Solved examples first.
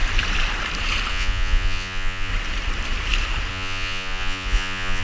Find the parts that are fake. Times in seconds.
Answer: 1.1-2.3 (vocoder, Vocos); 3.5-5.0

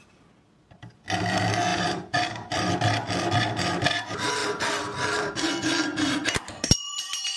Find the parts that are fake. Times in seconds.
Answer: 1.7-2.7 (vocoder, BigVGAN v2); 5.9-7.4

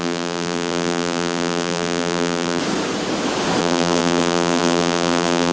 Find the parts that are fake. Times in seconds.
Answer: 0.0-2.6 (vocoder, BigVGAN v2); 3.6-5.5

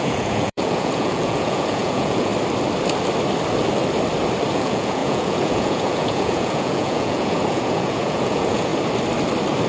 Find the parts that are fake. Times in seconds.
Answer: 0.0-2.3 (vocoder, Vocos); 4.5-8.7

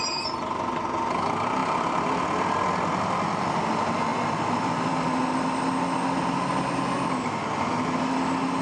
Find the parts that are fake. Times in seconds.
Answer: 1.6-2.6 (vocoder, BigVGAN v2); 4.1-5.0

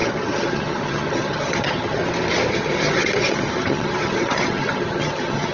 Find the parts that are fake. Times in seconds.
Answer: 0.0-2.0 (vocoder, HiFi-GAN); 2.5-5.5

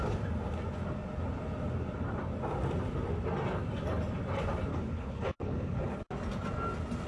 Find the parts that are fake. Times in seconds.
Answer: 4.7-6.1 (codec, HILCodec)

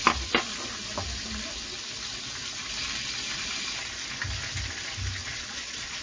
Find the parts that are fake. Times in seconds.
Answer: 5.2-6.0 (vocoder, Vocos)